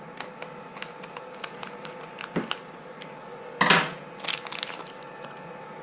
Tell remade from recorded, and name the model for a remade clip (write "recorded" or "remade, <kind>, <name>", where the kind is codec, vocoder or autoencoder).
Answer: recorded